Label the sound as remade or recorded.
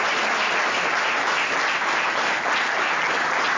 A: recorded